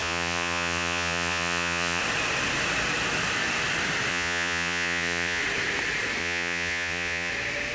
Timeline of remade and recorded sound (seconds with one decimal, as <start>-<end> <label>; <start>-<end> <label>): 0.0-2.0 remade; 2.0-4.1 recorded; 4.1-5.4 remade; 5.4-6.2 recorded; 6.2-7.3 remade; 7.3-7.7 recorded